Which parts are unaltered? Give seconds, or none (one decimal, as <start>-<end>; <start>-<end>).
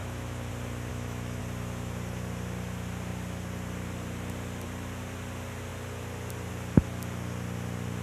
0.5-0.9; 1.4-8.0